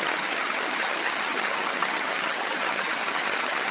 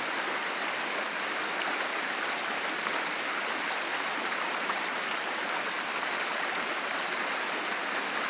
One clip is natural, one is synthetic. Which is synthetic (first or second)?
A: first